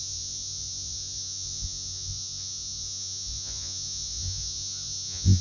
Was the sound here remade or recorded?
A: remade